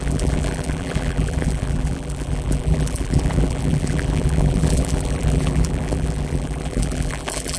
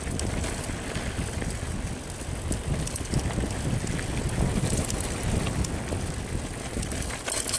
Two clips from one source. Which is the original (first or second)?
second